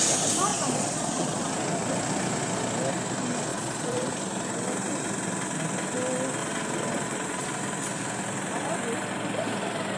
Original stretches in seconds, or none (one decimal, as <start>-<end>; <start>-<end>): 0.0-0.5; 1.4-3.5; 4.1-6.4; 7.5-10.0